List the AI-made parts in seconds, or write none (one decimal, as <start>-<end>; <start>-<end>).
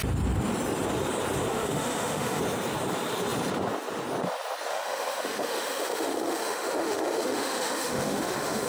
1.5-2.4; 4.7-8.7